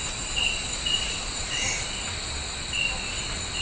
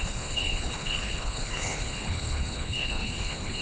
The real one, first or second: first